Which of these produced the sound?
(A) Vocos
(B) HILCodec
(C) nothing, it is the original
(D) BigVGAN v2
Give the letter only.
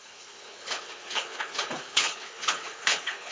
B